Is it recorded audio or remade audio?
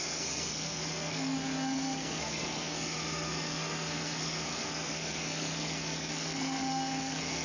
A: remade